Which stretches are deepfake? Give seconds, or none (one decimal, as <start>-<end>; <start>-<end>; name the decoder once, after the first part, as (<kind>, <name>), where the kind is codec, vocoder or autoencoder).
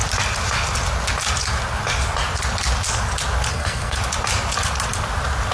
3.5-4.0 (codec, SNAC)